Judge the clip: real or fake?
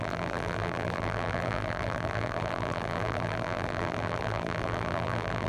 fake